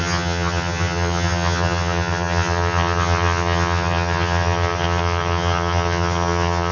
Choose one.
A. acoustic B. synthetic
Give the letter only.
B